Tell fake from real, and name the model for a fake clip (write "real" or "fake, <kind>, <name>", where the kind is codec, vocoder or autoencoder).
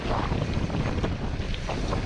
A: real